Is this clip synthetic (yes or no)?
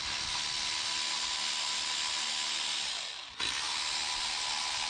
no